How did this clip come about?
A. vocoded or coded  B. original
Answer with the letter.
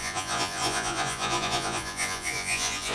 A